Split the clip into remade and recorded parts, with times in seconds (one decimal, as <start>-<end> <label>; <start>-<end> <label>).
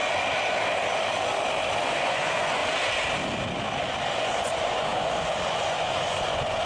0.0-1.8 recorded; 1.8-2.6 remade; 2.6-4.2 recorded; 4.2-6.7 remade